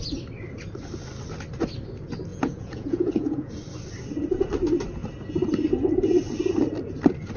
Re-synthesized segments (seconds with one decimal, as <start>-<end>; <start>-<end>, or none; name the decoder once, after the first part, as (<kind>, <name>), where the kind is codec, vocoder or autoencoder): 2.3-3.5 (vocoder, Vocos)

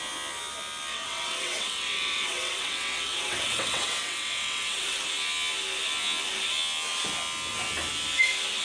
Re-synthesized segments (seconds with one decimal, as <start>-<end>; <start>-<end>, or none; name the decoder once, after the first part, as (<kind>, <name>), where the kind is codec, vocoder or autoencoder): 0.9-5.0 (vocoder, WaveNeXt)

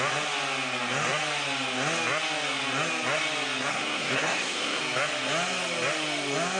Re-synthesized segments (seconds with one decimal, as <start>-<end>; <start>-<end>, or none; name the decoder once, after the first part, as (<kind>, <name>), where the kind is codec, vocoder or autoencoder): 3.7-4.8 (codec, SNAC)

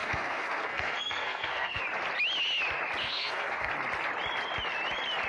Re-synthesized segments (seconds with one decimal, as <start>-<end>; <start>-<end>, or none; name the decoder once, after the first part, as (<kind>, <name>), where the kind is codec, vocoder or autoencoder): 0.0-1.8 (codec, SNAC); 3.0-3.7